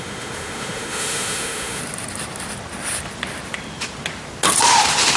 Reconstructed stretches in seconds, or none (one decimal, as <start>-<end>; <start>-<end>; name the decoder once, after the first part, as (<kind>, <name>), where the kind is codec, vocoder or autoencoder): 0.0-1.8 (autoencoder, DAC-VAE)